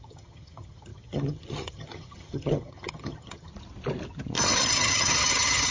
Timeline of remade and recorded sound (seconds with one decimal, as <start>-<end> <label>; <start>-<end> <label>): 0.0-3.5 remade; 3.5-4.7 recorded; 4.7-5.7 remade